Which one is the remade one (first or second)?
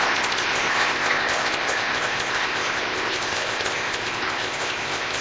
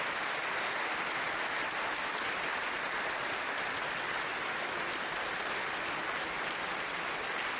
first